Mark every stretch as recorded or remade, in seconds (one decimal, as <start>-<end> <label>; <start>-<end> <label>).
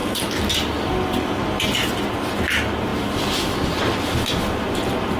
0.0-5.2 recorded